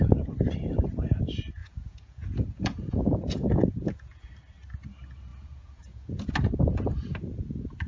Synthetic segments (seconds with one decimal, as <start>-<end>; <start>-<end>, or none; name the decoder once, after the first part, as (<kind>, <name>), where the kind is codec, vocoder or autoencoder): 1.6-4.3 (vocoder, Vocos); 5.3-6.3